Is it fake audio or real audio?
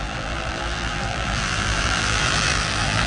fake